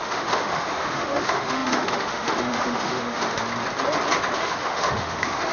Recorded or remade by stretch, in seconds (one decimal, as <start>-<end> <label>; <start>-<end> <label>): 0.0-3.4 remade; 3.4-4.4 recorded; 4.4-5.5 remade